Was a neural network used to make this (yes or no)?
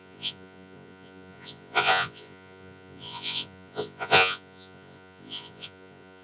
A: yes